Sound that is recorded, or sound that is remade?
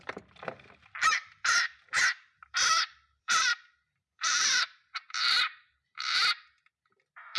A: remade